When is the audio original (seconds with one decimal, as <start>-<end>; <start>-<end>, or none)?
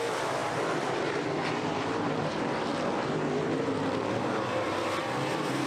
2.7-3.4